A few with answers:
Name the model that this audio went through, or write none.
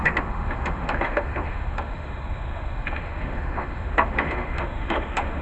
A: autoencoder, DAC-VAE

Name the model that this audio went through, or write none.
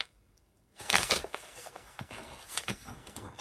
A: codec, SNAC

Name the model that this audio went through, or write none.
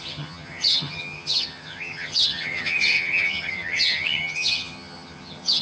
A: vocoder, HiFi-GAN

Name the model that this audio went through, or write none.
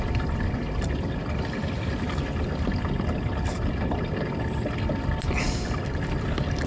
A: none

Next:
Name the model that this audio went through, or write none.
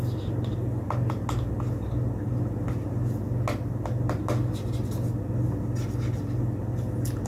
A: none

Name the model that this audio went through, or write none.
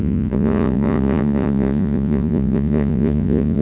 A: vocoder, Vocos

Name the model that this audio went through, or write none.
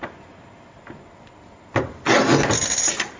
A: none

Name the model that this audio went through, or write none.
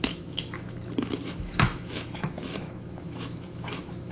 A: autoencoder, DAC-VAE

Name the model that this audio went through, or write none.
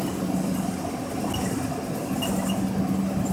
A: none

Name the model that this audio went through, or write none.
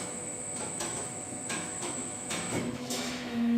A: autoencoder, DAC-VAE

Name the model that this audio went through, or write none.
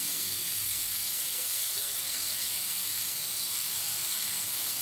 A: codec, SNAC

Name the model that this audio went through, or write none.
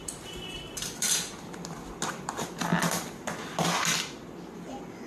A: none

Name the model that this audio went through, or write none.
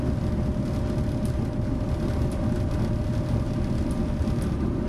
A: none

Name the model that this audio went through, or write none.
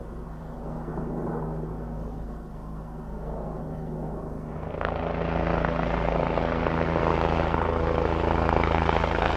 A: codec, SNAC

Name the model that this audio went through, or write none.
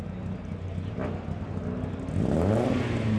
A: none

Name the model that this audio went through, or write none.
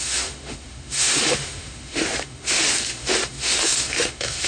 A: autoencoder, DAC-VAE